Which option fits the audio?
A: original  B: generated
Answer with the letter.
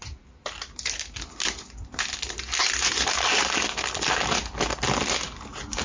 A